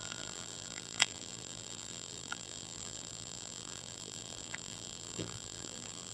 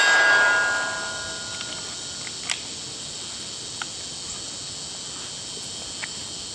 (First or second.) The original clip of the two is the second